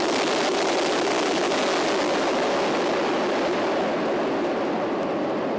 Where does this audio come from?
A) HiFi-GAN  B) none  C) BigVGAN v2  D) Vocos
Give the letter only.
B